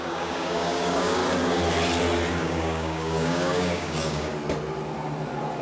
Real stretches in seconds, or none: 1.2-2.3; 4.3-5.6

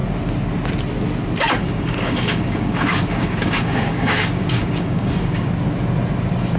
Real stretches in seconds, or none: 0.0-1.6; 5.5-6.6

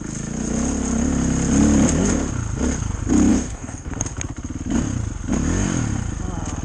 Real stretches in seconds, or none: 0.0-3.3; 3.9-6.6

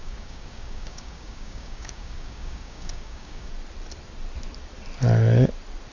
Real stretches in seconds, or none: 3.5-5.9